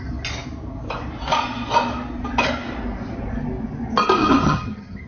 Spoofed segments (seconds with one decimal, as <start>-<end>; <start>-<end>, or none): 4.2-5.1